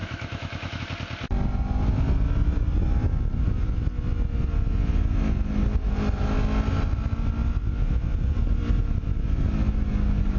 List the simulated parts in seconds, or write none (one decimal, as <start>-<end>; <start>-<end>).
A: 0.0-0.8